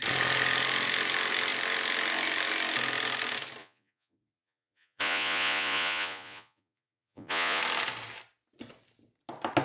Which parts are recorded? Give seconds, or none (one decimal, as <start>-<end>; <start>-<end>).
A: 0.0-3.6; 7.6-9.6

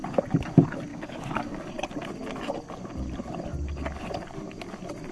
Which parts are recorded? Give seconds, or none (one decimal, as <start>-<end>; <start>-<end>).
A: 0.0-0.9; 1.6-5.1